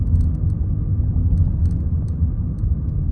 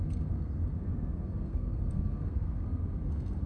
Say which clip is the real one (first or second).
first